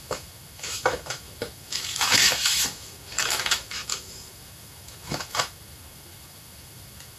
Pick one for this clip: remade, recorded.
remade